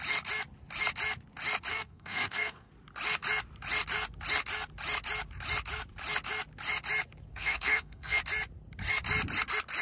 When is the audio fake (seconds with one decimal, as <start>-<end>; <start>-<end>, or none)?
1.7-2.7; 7.3-8.2